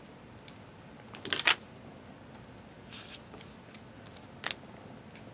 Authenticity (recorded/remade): recorded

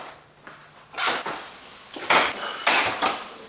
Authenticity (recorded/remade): recorded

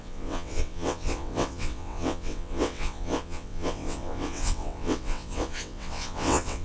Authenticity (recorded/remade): remade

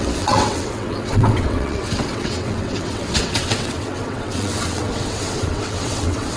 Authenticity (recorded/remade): remade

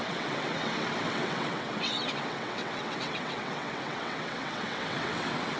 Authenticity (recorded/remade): remade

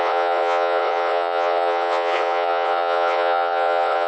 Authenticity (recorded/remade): remade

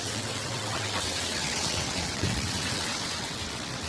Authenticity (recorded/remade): remade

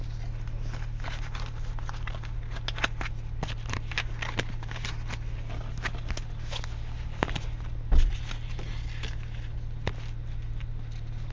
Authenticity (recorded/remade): recorded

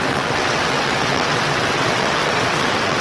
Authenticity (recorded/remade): remade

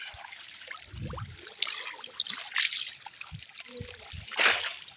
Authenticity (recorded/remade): recorded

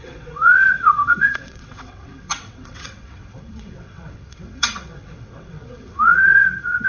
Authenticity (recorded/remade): remade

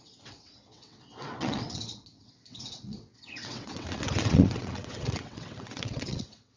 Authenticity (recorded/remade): remade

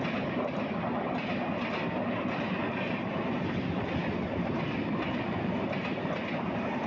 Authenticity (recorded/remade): recorded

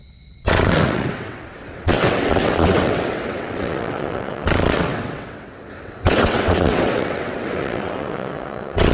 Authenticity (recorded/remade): remade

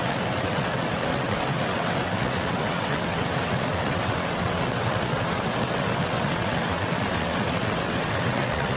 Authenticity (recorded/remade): remade